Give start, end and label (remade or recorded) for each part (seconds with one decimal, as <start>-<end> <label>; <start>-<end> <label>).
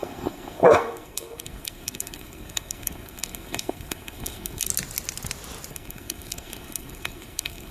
0.0-4.7 remade; 4.7-5.7 recorded; 5.7-7.7 remade